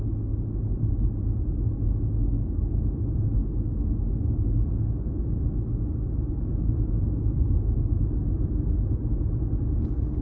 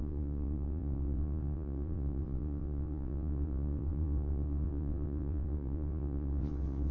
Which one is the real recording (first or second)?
first